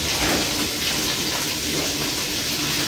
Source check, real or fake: real